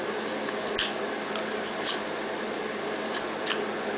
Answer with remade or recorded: recorded